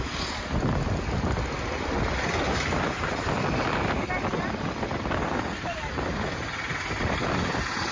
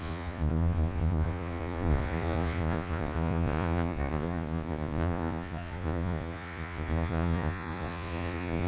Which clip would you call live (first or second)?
first